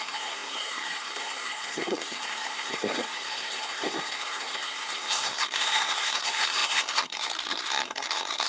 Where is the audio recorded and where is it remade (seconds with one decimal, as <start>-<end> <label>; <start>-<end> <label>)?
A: 0.0-8.5 remade